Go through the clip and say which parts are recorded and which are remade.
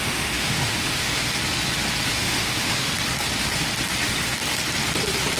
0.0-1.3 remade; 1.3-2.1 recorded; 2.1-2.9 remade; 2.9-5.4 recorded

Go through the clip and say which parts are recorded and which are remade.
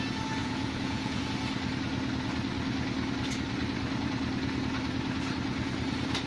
0.0-0.4 recorded; 0.4-1.2 remade; 1.2-6.3 recorded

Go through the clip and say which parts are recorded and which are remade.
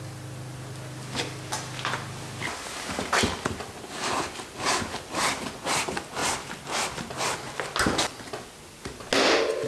0.0-9.7 recorded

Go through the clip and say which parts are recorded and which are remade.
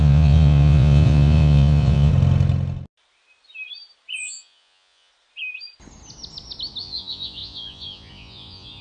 0.0-2.1 remade; 2.1-4.2 recorded; 4.2-5.1 remade; 5.1-6.8 recorded; 6.8-8.8 remade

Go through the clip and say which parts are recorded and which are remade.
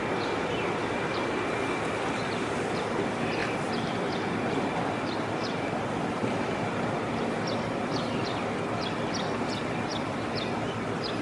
0.0-11.2 recorded